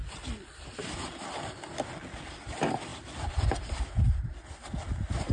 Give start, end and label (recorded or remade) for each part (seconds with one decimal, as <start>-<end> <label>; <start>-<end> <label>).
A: 0.0-2.0 remade; 2.0-2.9 recorded; 2.9-3.7 remade; 3.7-5.3 recorded